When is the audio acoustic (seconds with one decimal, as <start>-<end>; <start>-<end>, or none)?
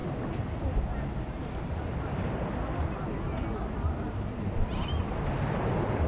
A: 0.0-6.1